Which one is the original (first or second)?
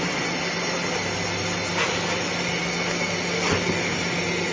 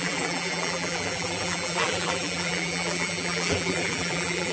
first